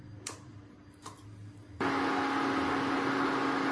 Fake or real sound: real